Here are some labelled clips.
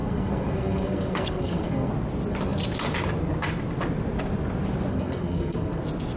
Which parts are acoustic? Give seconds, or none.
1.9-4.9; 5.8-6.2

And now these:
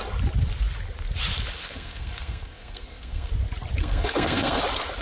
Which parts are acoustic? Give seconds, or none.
0.0-1.6; 3.3-3.8; 4.6-5.0

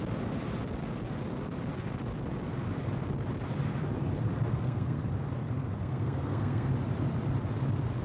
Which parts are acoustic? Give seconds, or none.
0.0-4.5; 5.1-5.8; 6.7-8.0

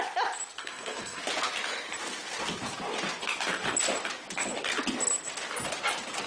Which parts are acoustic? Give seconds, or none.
0.0-0.6; 1.2-6.3